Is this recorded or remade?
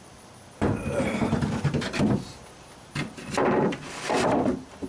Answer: remade